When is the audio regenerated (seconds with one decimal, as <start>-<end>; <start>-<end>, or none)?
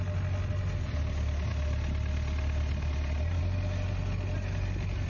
none